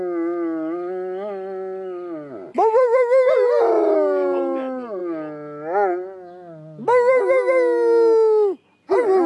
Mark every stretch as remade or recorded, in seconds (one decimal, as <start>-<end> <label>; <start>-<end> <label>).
0.0-9.3 recorded